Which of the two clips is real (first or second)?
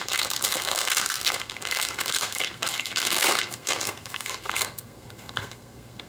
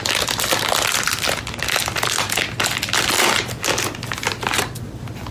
second